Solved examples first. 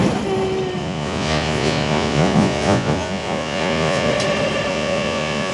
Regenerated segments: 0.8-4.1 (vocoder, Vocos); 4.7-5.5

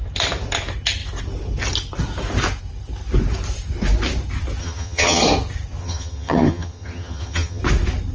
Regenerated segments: 4.6-5.2 (vocoder, HiFi-GAN); 5.8-7.6

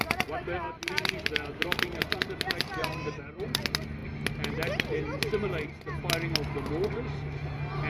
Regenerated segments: 2.8-3.6 (vocoder, BigVGAN v2)

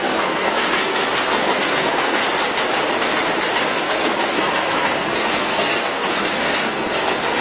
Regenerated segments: 0.0-2.2 (codec, SNAC); 3.7-7.4

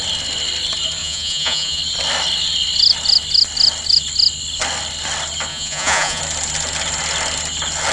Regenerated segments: 1.0-1.8 (vocoder, Vocos); 5.5-6.2

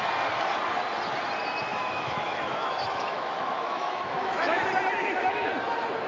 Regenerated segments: 1.7-4.6 (autoencoder, DAC-VAE); 5.0-5.5

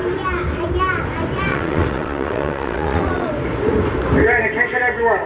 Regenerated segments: 1.5-3.3 (vocoder, WaveNeXt)